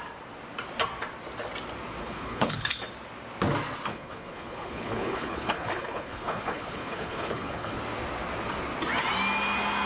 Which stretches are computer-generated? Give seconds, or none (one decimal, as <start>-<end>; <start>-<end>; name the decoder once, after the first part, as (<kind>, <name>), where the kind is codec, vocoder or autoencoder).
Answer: 2.0-2.8 (codec, HILCodec); 3.9-7.8